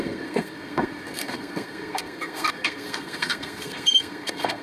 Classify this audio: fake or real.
fake